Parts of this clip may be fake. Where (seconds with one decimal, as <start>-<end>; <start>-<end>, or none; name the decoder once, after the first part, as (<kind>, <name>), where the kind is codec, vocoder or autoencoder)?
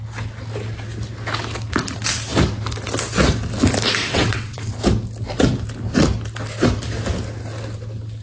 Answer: 4.0-4.7 (vocoder, WaveNeXt)